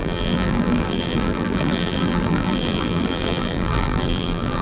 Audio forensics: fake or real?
fake